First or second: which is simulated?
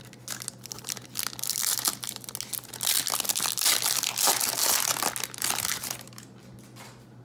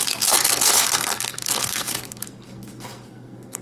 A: second